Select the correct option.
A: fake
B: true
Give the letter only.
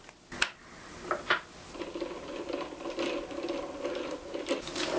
B